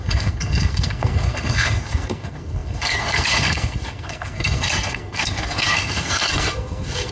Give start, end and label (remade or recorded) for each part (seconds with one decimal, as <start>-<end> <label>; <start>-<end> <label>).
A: 0.0-7.1 remade